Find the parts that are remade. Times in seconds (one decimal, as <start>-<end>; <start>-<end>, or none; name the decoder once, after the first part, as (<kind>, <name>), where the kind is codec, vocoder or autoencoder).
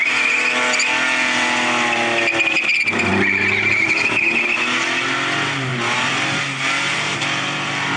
3.1-3.9 (vocoder, BigVGAN v2); 5.7-8.0